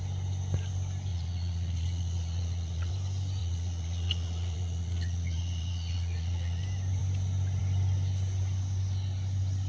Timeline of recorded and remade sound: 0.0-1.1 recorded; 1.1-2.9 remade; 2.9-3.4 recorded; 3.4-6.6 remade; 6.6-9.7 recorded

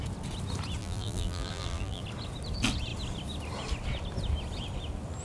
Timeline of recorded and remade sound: 0.0-0.8 recorded; 0.8-2.0 remade; 2.0-5.2 recorded

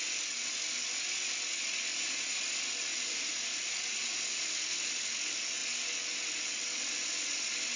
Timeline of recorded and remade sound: 0.0-1.9 recorded; 1.9-2.4 remade; 2.4-2.9 recorded; 2.9-4.2 remade; 4.2-7.8 recorded

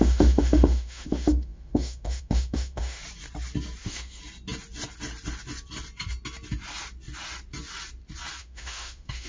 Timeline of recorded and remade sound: 0.0-3.0 remade; 3.0-3.8 recorded; 3.8-4.2 remade; 4.2-8.4 recorded; 8.4-9.3 remade

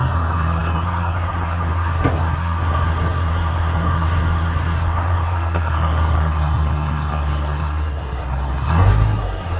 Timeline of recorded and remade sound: 0.0-9.6 remade

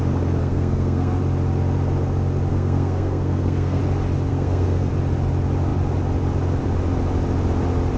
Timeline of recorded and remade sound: 0.0-0.4 recorded; 0.4-1.2 remade; 1.2-2.5 recorded; 2.5-3.8 remade; 3.8-4.3 recorded; 4.3-4.9 remade; 4.9-8.0 recorded

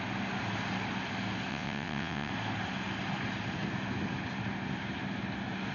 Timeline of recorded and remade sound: 0.0-1.5 recorded; 1.5-2.3 remade; 2.3-5.7 recorded

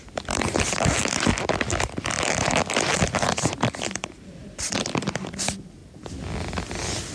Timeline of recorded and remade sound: 0.0-1.3 remade; 1.3-3.2 recorded; 3.2-4.4 remade; 4.4-5.1 recorded; 5.1-5.8 remade; 5.8-7.1 recorded